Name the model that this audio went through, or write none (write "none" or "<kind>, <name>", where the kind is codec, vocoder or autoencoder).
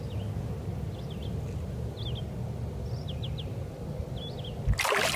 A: none